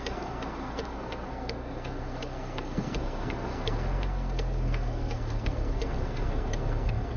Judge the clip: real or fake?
fake